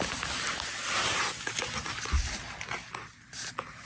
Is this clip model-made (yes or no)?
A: no